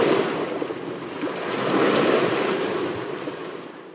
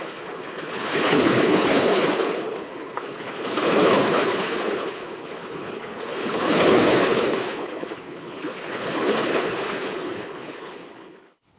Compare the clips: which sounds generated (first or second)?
second